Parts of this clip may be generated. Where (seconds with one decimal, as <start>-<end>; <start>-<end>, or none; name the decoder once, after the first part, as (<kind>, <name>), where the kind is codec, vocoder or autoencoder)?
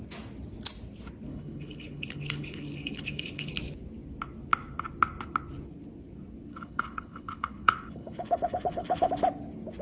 1.3-3.5 (codec, HILCodec); 6.5-9.1